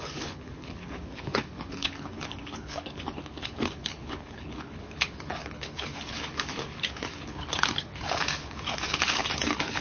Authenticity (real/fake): fake